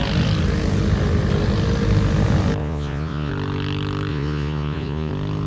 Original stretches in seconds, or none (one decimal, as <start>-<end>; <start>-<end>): 0.0-2.6; 3.3-4.1; 5.1-5.5